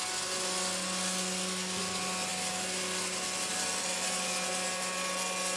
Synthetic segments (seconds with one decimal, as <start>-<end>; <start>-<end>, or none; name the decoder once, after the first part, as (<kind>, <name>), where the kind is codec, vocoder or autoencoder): none

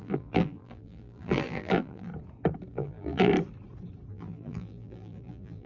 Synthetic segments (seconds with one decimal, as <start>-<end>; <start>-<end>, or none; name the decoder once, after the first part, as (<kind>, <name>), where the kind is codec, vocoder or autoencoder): 0.0-2.1 (vocoder, BigVGAN v2); 2.7-3.3; 4.1-5.7

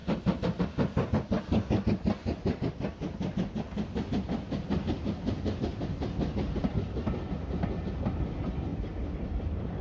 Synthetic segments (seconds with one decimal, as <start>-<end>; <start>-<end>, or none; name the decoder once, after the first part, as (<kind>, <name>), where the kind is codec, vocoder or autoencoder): 0.0-0.6 (vocoder, BigVGAN v2); 6.6-7.3; 8.7-9.8

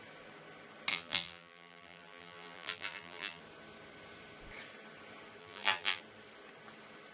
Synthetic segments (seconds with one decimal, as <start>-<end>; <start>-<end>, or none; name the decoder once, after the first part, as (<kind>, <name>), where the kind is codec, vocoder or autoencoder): 0.9-3.4 (vocoder, BigVGAN v2); 5.4-6.0

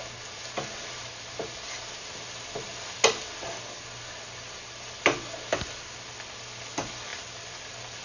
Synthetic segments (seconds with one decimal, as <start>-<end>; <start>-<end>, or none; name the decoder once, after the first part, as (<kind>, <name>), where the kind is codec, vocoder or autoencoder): 7.1-8.0 (vocoder, BigVGAN v2)

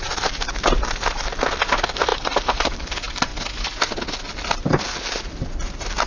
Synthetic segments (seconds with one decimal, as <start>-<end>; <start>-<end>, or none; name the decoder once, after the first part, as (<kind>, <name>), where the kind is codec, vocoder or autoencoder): 0.0-3.3 (vocoder, BigVGAN v2); 4.3-6.1

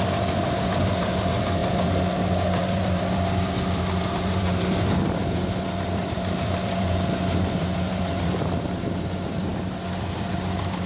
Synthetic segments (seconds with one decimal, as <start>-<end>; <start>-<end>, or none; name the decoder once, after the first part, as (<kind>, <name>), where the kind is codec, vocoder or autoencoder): 0.0-10.9 (vocoder, BigVGAN v2)

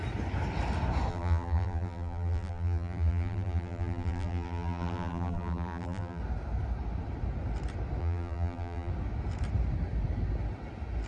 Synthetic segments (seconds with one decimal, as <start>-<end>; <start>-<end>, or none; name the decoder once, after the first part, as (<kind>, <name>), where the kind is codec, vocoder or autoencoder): 1.1-6.2 (vocoder, BigVGAN v2); 8.0-8.9